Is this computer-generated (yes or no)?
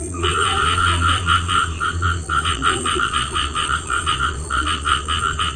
yes